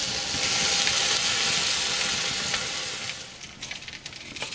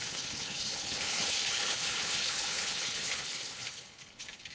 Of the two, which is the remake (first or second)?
second